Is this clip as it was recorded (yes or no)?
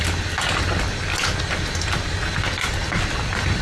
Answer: yes